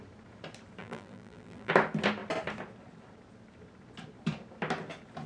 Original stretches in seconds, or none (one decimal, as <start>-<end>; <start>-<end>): 0.0-0.8; 1.7-5.3